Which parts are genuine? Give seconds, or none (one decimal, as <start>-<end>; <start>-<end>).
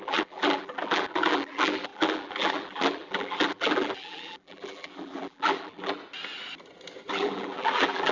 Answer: 6.0-7.1